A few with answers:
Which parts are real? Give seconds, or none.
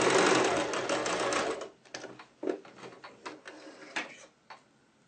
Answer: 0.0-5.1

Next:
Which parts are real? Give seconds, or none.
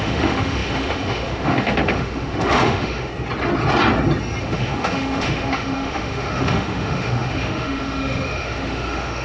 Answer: 3.1-4.4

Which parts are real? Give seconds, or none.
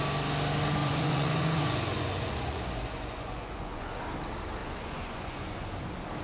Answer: 0.0-0.8; 4.0-4.6; 5.7-6.2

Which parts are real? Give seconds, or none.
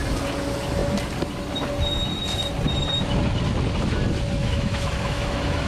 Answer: 0.0-4.4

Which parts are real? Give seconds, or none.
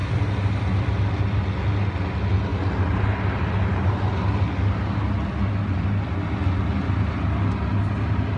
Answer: 0.0-8.4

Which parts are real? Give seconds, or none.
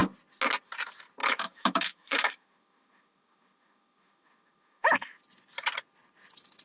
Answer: 0.0-1.2; 5.2-6.6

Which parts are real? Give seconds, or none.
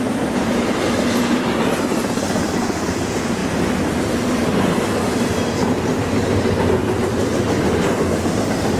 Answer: 0.0-8.8